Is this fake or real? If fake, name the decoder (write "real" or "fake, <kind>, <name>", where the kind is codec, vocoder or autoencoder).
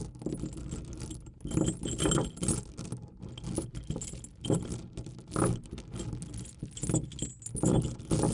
real